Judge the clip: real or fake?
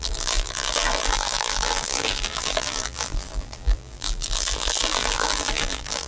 fake